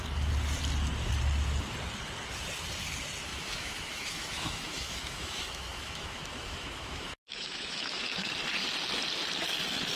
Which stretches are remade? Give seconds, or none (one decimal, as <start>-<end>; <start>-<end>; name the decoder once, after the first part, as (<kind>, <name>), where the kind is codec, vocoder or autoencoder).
3.3-8.3 (autoencoder, DAC-VAE)